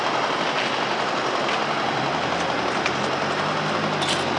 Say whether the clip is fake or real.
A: real